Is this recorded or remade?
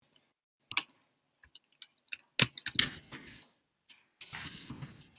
recorded